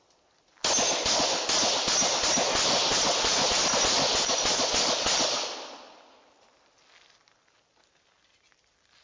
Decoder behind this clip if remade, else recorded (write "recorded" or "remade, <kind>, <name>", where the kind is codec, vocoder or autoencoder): recorded